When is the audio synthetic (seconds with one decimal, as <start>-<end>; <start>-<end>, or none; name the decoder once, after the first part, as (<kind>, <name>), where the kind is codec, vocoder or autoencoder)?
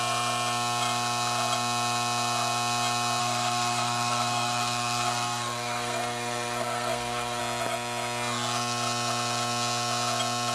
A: 3.2-7.4 (codec, SNAC)